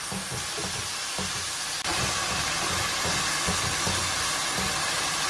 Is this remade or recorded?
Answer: recorded